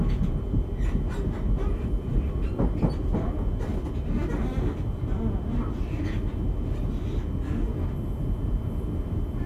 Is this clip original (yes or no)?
yes